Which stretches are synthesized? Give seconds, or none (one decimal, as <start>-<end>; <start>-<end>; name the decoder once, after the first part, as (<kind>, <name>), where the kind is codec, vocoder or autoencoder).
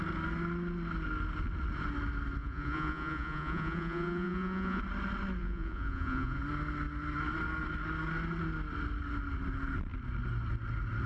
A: 2.4-4.8 (vocoder, Vocos); 5.4-6.4